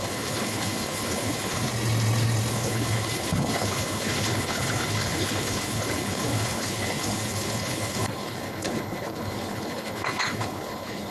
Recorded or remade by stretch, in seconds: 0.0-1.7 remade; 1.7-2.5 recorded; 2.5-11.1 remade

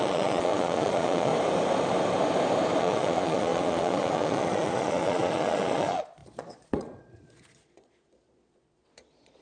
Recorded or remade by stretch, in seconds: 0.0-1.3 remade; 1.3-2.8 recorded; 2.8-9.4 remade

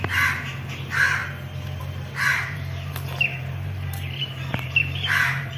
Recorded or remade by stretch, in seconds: 0.0-2.3 recorded; 2.3-2.9 remade; 2.9-3.3 recorded; 3.3-5.6 remade

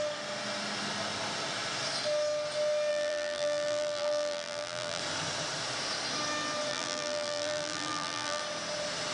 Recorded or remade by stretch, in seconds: 0.0-2.9 recorded; 2.9-5.0 remade; 5.0-6.7 recorded; 6.7-8.4 remade; 8.4-9.1 recorded